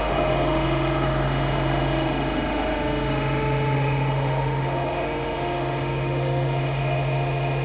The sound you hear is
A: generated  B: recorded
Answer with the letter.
A